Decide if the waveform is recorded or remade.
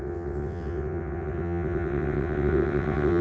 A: remade